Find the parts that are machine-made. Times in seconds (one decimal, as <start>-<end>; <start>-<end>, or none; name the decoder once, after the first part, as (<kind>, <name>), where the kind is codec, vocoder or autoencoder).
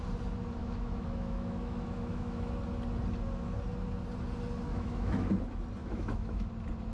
0.6-2.6 (autoencoder, DAC-VAE); 4.7-5.3; 5.8-6.5